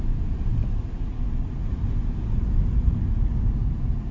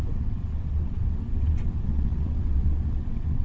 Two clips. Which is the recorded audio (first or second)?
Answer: first